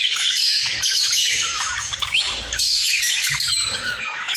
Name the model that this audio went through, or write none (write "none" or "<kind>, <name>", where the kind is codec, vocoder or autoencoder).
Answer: codec, DAC